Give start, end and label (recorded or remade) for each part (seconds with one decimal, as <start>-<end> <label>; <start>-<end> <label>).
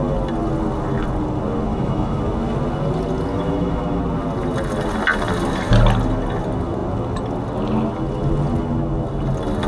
0.0-1.7 recorded; 1.7-2.2 remade; 2.2-3.3 recorded; 3.3-4.0 remade; 4.0-9.7 recorded